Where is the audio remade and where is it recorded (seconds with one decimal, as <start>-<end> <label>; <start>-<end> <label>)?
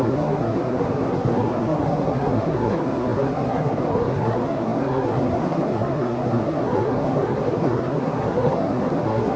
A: 0.0-9.4 remade